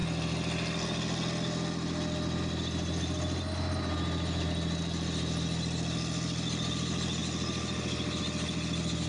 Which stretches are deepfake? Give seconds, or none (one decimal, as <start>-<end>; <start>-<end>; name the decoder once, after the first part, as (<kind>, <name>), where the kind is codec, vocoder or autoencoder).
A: none